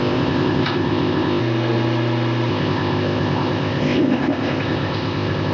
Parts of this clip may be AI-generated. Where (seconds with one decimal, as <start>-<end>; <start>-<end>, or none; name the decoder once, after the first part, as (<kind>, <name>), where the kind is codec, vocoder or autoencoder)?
0.0-1.4 (codec, ZipCodec); 2.5-5.5